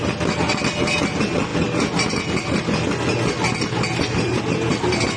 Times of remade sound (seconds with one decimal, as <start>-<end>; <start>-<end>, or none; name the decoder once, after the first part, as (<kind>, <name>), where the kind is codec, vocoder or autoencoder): none